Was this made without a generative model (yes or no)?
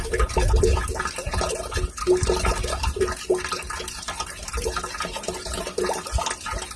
yes